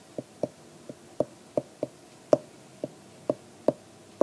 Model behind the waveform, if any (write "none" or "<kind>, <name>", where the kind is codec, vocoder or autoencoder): none